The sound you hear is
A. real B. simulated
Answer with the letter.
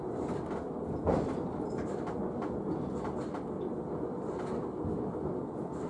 A